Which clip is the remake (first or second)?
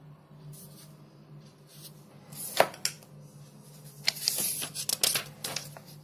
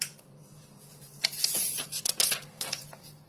second